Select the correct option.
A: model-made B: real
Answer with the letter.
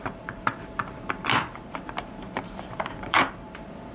A